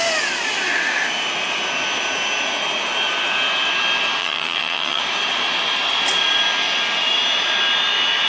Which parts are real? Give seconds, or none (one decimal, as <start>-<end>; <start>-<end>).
0.0-4.2; 5.0-8.3